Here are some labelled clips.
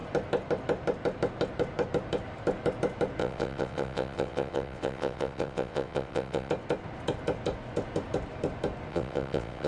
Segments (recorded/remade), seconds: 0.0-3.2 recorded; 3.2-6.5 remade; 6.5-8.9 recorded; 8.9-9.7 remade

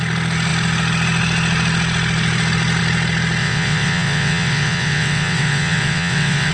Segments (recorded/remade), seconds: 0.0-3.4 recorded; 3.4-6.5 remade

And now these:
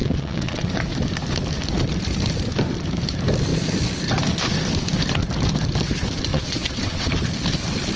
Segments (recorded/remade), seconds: 0.0-0.7 remade; 0.7-6.3 recorded; 6.3-7.1 remade; 7.1-8.0 recorded